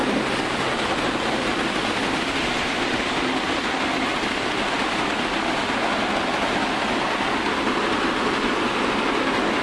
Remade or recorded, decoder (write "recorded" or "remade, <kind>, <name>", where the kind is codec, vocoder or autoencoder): recorded